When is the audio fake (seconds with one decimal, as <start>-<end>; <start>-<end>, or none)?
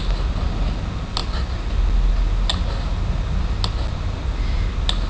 none